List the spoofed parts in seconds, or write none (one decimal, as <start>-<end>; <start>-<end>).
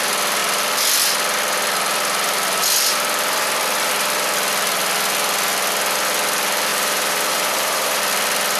6.7-8.0